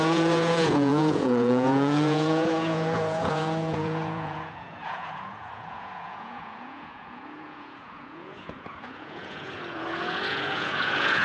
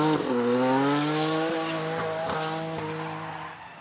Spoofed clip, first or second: first